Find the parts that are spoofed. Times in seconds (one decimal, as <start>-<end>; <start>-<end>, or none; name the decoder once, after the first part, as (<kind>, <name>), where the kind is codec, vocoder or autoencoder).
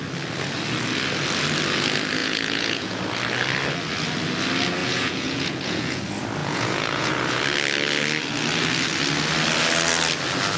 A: 2.2-3.0 (vocoder, Vocos); 4.8-6.0; 6.4-7.4